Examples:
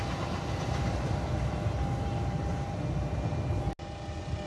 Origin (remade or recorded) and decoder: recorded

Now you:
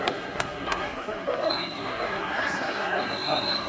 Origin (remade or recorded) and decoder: remade, codec, SNAC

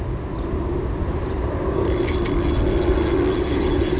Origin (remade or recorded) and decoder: recorded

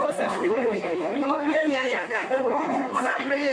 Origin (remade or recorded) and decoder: remade, codec, SNAC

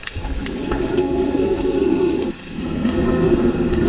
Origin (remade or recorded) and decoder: remade, codec, SNAC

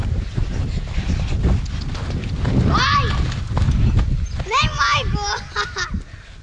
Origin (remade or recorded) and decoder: recorded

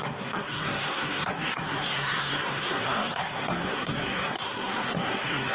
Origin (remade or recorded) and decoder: remade, codec, SNAC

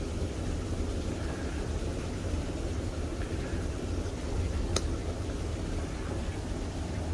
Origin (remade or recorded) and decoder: recorded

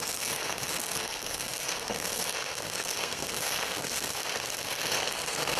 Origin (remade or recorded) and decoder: remade, codec, SNAC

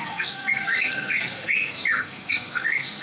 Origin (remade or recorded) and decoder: remade, codec, SNAC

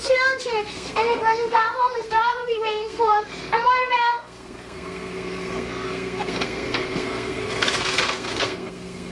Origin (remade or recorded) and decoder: remade, codec, SNAC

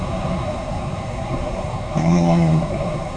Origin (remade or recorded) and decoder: remade, codec, SNAC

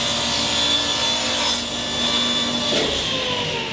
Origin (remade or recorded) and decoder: recorded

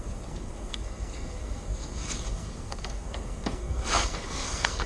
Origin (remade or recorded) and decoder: remade, codec, SNAC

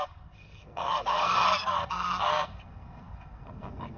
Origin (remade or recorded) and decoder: remade, codec, SNAC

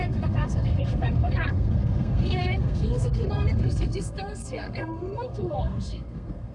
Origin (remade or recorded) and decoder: remade, codec, SNAC